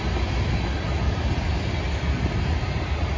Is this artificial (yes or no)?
no